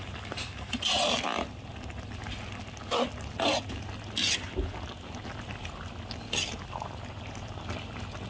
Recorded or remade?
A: recorded